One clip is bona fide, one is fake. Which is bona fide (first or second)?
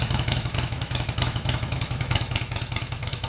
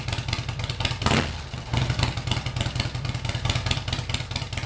second